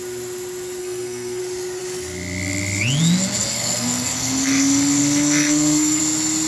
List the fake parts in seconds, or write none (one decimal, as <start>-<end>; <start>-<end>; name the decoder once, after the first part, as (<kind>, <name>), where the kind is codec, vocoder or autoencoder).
0.8-1.4 (codec, SNAC); 3.5-6.0